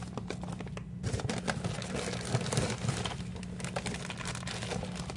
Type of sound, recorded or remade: recorded